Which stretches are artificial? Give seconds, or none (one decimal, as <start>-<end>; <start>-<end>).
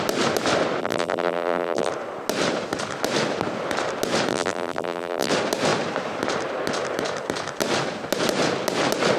0.8-1.9; 4.3-5.3